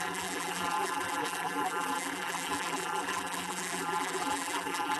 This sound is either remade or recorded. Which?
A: remade